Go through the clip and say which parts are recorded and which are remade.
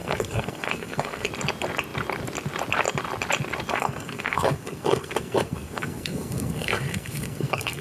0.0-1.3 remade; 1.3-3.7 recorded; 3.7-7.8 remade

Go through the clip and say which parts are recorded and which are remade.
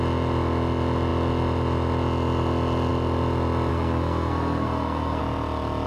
0.0-3.7 recorded; 3.7-5.2 remade; 5.2-5.9 recorded